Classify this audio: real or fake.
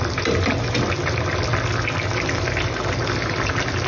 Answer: real